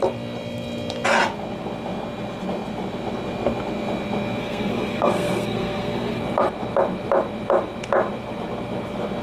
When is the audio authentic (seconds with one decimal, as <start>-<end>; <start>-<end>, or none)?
0.0-4.4; 6.2-9.2